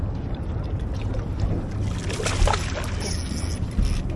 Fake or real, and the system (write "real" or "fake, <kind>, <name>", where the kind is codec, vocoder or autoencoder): real